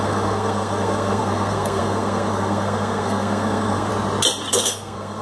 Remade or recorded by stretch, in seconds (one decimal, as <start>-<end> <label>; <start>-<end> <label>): 0.0-3.9 remade; 3.9-4.5 recorded; 4.5-5.2 remade